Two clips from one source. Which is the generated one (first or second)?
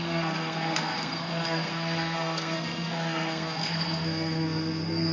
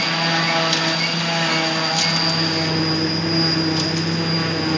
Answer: first